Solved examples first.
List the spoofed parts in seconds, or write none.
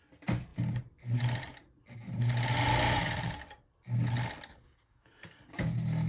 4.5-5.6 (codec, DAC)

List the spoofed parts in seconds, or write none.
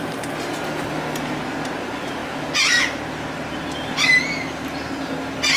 none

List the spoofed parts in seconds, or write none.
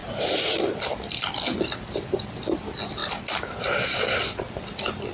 0.0-1.3 (vocoder, BigVGAN v2)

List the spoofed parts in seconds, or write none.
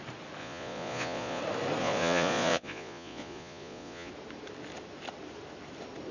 0.4-1.4 (vocoder, Vocos); 1.8-4.1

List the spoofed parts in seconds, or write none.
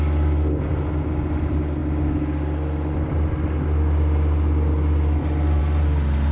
none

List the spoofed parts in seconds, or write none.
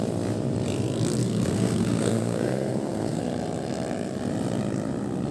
1.2-3.2 (codec, SNAC)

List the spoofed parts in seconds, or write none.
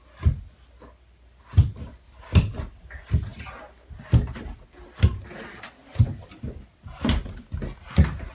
none